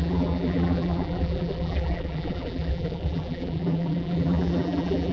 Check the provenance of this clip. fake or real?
fake